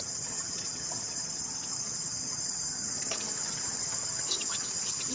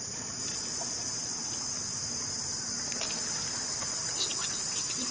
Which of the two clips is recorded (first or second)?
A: second